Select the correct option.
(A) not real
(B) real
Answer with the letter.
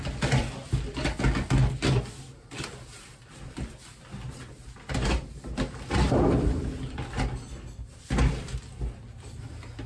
B